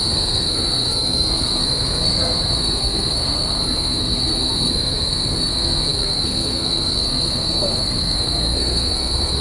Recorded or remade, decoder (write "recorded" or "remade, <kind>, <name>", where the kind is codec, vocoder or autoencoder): remade, codec, SNAC